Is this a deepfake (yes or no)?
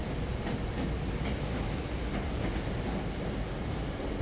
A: no